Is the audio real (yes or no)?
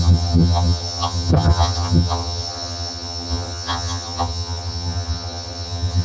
no